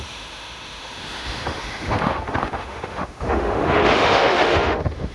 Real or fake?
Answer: fake